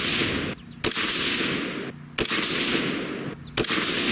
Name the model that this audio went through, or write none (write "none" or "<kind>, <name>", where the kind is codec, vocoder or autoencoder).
none